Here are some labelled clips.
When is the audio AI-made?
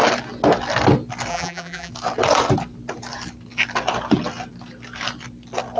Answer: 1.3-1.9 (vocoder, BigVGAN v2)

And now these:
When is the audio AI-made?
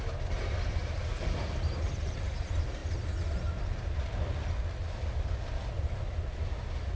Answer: 0.8-2.3 (vocoder, BigVGAN v2)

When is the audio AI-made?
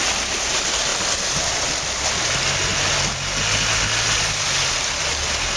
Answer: none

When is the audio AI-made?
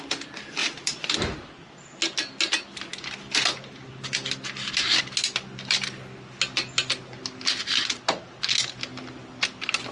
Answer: 0.6-1.2 (vocoder, BigVGAN v2)